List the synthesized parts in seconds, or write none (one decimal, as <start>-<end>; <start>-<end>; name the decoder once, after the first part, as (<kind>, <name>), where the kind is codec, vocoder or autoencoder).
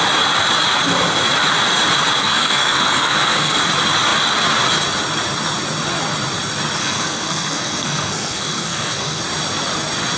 2.2-3.6 (codec, SNAC); 6.8-9.2